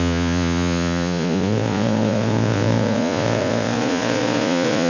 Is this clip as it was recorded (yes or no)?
no